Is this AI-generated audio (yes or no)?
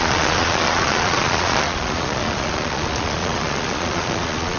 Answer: yes